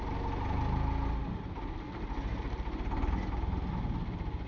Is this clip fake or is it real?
real